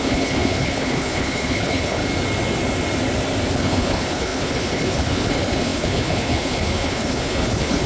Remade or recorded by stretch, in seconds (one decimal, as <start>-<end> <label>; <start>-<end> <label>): 0.0-2.0 remade; 2.0-3.5 recorded; 3.5-7.9 remade